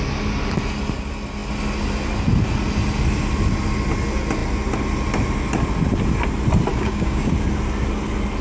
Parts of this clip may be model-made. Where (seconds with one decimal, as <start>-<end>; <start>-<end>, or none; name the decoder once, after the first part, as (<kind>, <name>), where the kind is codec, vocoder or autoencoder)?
6.7-7.3 (codec, DAC)